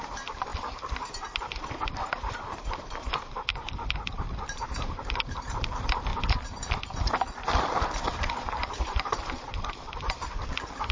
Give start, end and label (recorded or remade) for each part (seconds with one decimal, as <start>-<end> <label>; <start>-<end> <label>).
0.0-0.5 remade; 0.5-2.4 recorded; 2.4-6.1 remade; 6.1-8.1 recorded; 8.1-10.9 remade